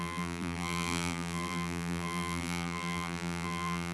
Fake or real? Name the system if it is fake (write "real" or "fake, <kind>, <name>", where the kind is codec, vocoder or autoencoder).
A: fake, vocoder, BigVGAN v2